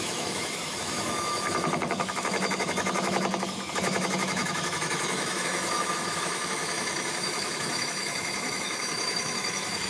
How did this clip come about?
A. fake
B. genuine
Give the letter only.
A